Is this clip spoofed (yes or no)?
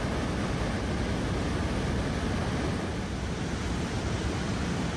no